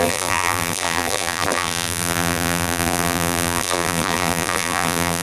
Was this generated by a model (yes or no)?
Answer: yes